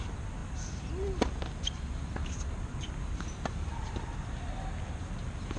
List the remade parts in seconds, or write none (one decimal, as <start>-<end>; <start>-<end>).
none